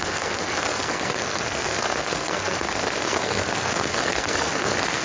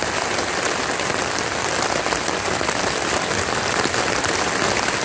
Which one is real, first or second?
second